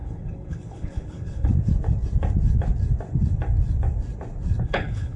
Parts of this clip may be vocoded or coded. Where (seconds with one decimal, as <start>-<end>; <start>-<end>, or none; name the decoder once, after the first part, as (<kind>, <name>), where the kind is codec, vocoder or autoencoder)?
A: 0.0-1.5 (codec, HILCodec); 4.6-5.2